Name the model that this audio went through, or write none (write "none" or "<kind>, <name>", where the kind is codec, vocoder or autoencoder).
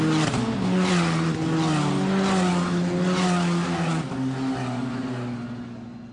none